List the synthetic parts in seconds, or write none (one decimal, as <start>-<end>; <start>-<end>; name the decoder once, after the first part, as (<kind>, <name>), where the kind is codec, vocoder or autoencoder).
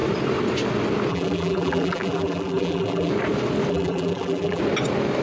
1.1-3.1 (vocoder, BigVGAN v2); 3.7-4.6